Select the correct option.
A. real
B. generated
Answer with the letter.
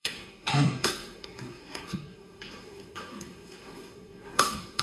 B